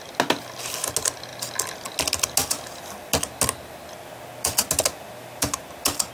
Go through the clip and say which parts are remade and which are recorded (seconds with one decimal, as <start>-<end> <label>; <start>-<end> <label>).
0.0-6.1 recorded